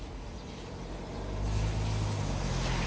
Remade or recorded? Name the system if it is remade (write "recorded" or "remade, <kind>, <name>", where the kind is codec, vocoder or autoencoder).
recorded